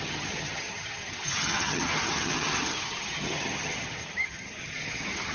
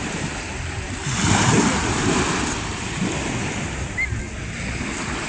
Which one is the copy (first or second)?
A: first